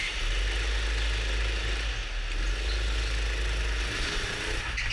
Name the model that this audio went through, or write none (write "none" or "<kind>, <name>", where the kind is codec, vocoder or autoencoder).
none